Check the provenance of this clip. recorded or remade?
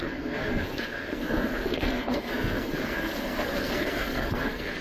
remade